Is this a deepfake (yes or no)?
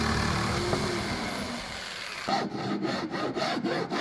no